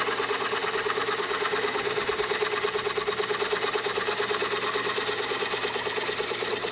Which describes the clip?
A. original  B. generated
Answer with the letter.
A